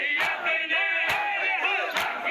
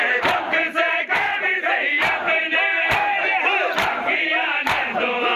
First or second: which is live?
first